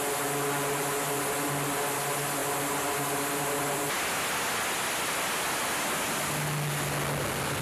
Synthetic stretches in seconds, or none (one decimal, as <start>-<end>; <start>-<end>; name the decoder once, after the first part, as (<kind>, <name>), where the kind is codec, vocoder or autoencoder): none